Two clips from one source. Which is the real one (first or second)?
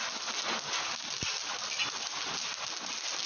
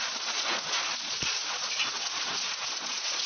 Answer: first